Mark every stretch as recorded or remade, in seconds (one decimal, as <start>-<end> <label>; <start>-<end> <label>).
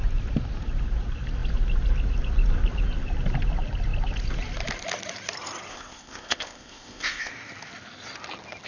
0.0-5.7 recorded; 5.7-7.3 remade; 7.3-8.7 recorded